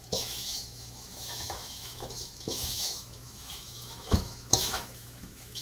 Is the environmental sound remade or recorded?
remade